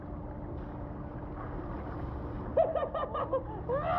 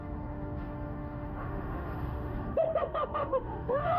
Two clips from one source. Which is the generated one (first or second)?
second